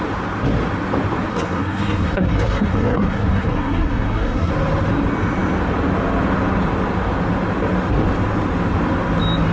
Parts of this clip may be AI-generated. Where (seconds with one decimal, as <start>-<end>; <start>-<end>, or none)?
1.3-4.5

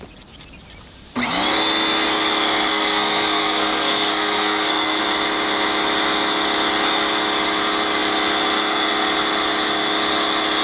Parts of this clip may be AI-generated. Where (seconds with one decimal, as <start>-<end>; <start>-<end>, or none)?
2.7-5.0

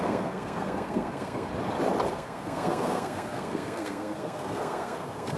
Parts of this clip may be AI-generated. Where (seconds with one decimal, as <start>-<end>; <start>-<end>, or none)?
0.0-1.5; 2.1-5.4